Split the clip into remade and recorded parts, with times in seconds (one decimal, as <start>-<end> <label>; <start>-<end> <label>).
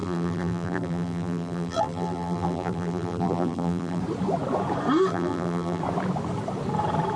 0.0-4.0 remade; 4.0-5.1 recorded; 5.1-5.8 remade; 5.8-7.2 recorded